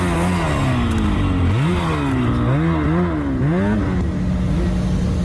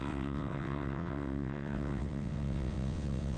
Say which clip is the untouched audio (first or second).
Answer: first